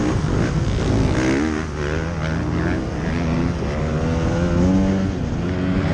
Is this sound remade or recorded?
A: recorded